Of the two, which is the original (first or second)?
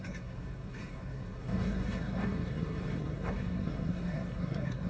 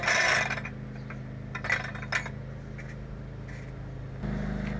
second